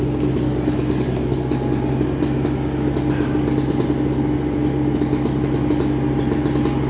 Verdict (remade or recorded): recorded